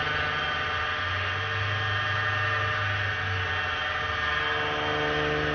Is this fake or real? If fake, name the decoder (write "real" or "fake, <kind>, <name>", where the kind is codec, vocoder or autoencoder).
real